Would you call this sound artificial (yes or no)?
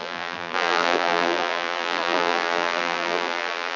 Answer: yes